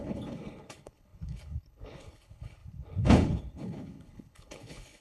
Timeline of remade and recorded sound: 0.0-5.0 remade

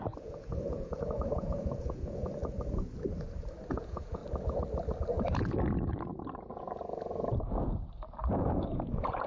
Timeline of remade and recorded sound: 0.0-2.4 remade; 2.4-3.7 recorded; 3.7-4.2 remade; 4.2-6.5 recorded; 6.5-7.1 remade; 7.1-8.3 recorded; 8.3-9.3 remade

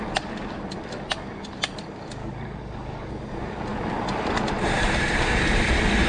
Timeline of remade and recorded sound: 0.0-2.2 recorded; 2.2-3.1 remade; 3.1-6.1 recorded